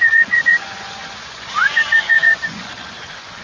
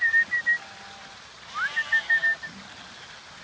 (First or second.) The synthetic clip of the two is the first